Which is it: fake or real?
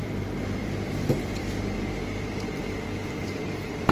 fake